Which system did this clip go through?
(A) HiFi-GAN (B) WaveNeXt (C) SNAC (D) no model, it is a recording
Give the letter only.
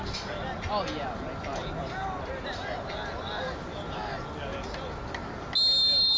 D